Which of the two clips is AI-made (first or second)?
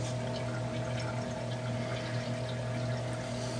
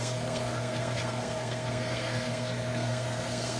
second